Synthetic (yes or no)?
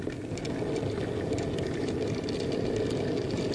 no